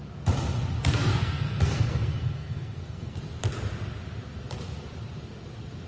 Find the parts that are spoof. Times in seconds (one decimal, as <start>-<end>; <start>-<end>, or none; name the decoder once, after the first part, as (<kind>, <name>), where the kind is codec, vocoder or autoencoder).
0.8-3.2 (codec, SNAC)